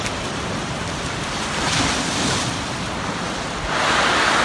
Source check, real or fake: real